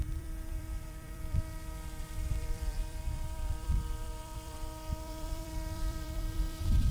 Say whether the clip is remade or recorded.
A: remade